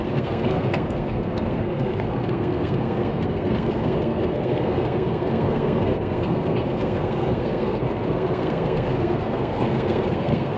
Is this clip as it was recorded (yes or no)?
no